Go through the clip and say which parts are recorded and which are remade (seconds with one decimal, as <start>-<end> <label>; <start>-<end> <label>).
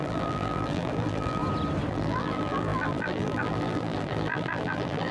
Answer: 0.0-1.4 remade; 1.4-1.9 recorded; 1.9-5.1 remade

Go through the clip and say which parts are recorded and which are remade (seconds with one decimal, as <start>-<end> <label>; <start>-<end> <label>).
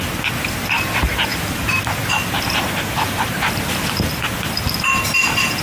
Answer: 0.0-1.3 recorded; 1.3-1.8 remade; 1.8-5.6 recorded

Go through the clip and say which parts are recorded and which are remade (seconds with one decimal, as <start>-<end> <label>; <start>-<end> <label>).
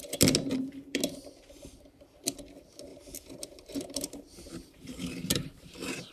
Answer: 0.0-2.9 recorded; 2.9-6.1 remade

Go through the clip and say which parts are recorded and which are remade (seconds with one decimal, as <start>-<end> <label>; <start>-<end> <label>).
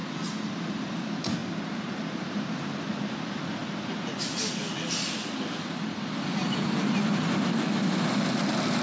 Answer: 0.0-1.4 recorded; 1.4-2.6 remade; 2.6-8.8 recorded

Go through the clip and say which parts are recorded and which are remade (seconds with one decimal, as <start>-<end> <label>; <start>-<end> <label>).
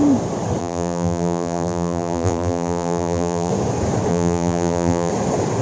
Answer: 0.0-0.6 recorded; 0.6-3.5 remade; 3.5-4.1 recorded; 4.1-5.1 remade; 5.1-5.6 recorded